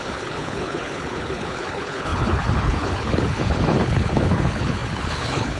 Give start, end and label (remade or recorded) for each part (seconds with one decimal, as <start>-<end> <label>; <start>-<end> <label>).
0.0-5.6 remade